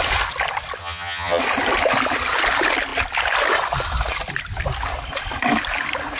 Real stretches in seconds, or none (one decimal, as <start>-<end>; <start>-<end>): 0.0-0.8; 1.4-6.2